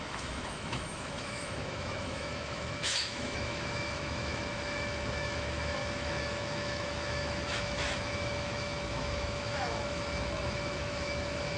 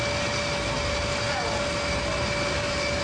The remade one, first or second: first